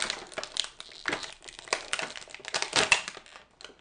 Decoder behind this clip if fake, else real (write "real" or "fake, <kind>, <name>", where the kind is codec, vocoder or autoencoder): real